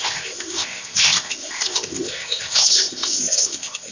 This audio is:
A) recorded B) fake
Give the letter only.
B